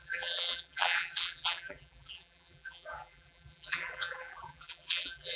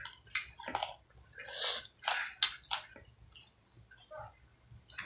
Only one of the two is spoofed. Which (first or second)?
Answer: first